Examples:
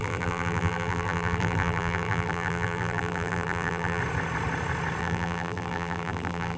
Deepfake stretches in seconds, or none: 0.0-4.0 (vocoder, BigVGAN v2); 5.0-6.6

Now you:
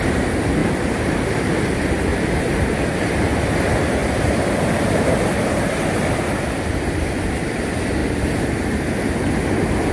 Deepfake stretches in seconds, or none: 0.6-1.5 (vocoder, BigVGAN v2); 2.1-2.6; 4.0-6.5

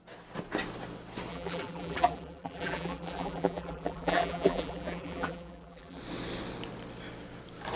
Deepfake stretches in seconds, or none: 1.3-6.0 (vocoder, BigVGAN v2)